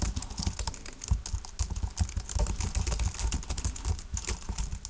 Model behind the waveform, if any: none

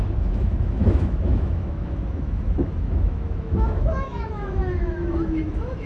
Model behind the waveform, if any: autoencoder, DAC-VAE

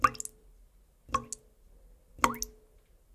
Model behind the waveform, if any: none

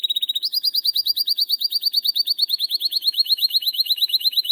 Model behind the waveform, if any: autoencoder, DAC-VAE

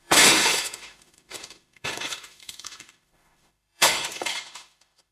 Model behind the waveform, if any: autoencoder, DAC-VAE